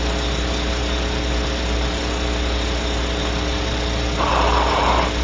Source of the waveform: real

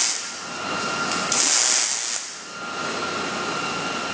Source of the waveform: real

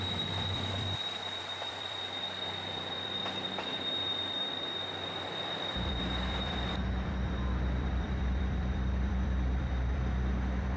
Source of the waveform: fake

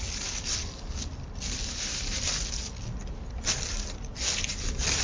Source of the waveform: real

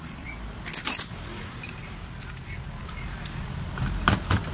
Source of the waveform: real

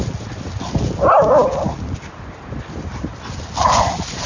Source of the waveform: real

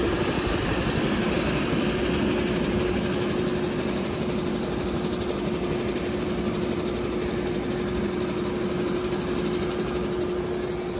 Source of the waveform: real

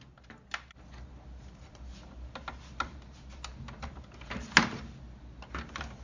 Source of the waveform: real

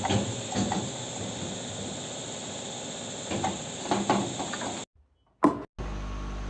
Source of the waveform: real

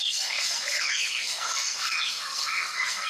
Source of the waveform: fake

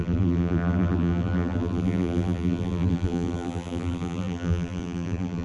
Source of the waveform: fake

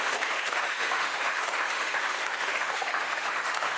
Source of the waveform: fake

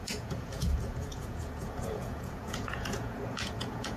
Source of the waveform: fake